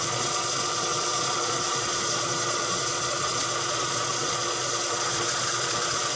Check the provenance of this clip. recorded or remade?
remade